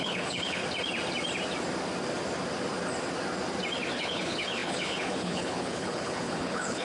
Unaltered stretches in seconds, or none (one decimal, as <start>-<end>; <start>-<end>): 0.6-4.0